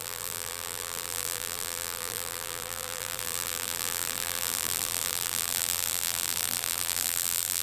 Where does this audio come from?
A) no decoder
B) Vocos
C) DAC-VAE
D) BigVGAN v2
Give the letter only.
D